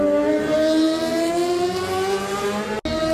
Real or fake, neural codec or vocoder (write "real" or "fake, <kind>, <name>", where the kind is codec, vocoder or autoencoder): real